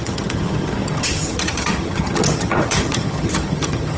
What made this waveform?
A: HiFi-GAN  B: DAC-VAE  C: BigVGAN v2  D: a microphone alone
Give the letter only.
A